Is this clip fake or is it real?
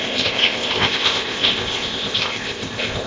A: fake